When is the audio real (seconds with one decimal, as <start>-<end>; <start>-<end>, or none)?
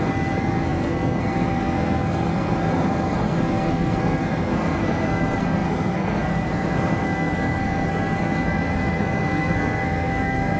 none